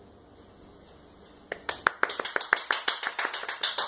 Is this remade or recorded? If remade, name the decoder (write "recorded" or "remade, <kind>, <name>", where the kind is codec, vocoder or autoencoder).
recorded